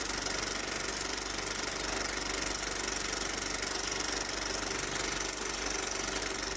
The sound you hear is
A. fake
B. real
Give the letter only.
B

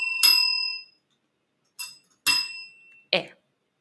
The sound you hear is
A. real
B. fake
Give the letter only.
A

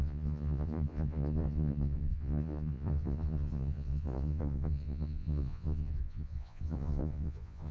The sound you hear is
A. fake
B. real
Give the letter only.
A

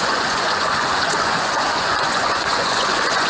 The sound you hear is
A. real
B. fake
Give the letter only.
B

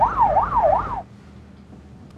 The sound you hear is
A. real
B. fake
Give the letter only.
A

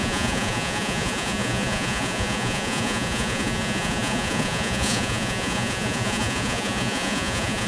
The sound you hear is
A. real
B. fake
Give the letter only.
B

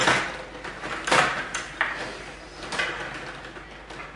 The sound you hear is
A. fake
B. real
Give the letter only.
B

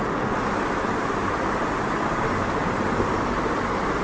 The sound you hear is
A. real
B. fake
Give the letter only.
A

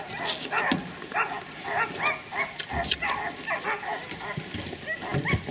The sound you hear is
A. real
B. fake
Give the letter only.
A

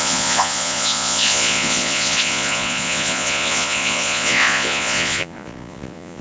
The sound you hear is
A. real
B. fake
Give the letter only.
B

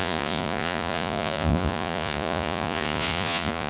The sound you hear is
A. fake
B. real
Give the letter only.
A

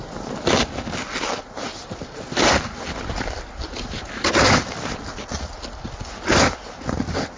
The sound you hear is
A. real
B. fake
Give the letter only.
A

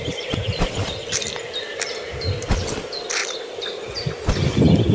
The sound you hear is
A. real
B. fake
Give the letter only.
A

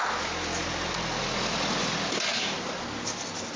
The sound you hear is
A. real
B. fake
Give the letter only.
A